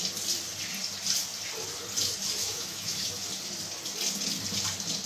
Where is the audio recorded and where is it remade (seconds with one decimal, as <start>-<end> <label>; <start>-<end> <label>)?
0.0-2.4 recorded; 2.4-3.1 remade; 3.1-5.1 recorded